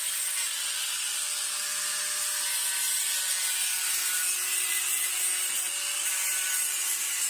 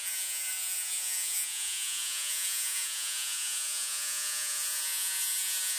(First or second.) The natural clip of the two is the first